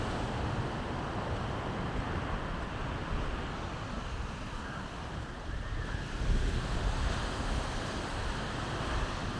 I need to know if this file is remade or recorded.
recorded